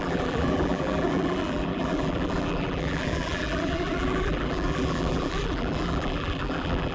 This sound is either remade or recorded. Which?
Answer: remade